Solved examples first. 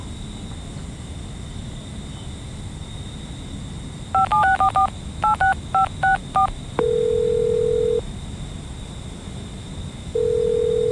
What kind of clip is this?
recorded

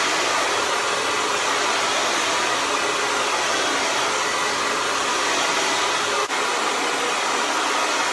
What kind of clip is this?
recorded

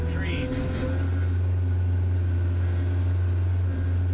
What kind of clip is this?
recorded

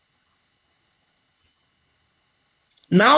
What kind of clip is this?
remade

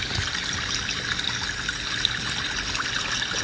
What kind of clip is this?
recorded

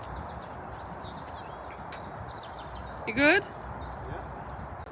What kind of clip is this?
recorded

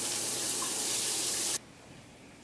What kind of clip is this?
remade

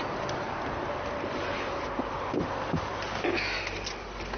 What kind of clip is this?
recorded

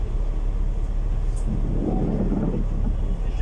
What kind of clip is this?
recorded